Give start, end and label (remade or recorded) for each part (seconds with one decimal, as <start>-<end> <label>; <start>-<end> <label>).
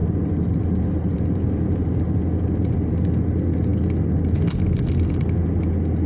0.0-2.0 remade; 2.0-6.1 recorded